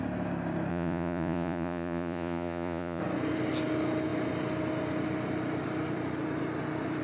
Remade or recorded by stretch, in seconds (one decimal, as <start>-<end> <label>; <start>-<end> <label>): 0.0-0.7 recorded; 0.7-3.0 remade; 3.0-7.0 recorded